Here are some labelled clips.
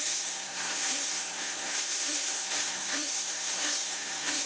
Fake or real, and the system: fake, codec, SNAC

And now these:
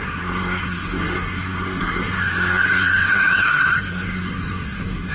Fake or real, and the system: fake, codec, SNAC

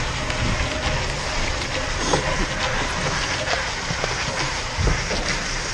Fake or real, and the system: real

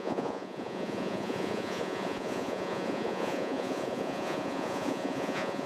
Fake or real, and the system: fake, vocoder, Vocos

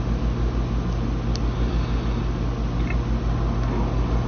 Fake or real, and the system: real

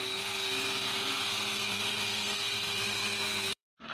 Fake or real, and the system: fake, codec, SNAC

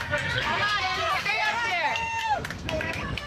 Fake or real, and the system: fake, codec, SNAC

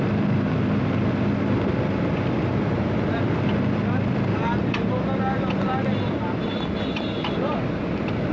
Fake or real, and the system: real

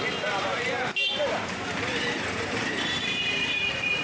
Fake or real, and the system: fake, vocoder, BigVGAN v2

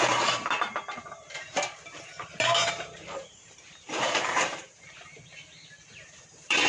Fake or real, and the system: fake, vocoder, BigVGAN v2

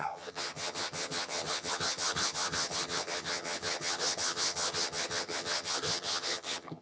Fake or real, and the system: fake, vocoder, HiFi-GAN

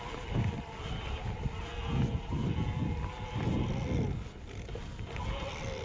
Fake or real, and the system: real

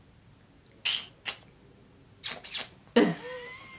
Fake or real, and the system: real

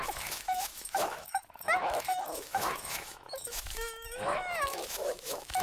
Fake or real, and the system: fake, autoencoder, DAC-VAE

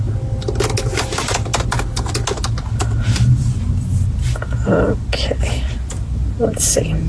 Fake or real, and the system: real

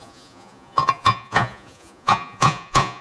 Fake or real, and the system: fake, vocoder, Vocos